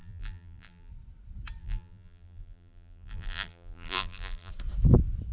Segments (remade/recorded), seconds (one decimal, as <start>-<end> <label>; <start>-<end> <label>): 0.0-0.9 remade; 0.9-1.6 recorded; 1.6-4.5 remade; 4.5-5.3 recorded